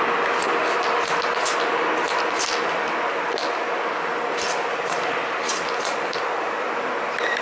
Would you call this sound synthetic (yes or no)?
no